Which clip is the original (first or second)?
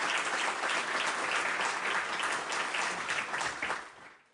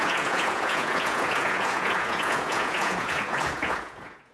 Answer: first